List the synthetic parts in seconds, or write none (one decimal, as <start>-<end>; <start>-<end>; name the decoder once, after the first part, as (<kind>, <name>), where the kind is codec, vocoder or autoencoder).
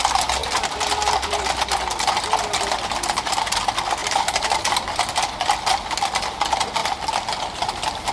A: 0.4-1.4 (vocoder, BigVGAN v2); 4.0-5.0; 6.8-7.6